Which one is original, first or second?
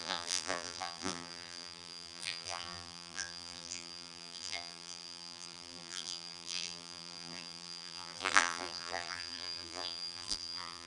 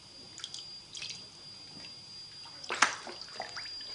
second